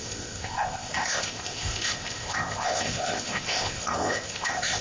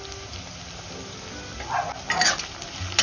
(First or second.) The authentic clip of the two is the second